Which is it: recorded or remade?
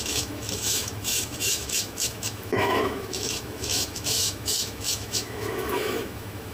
remade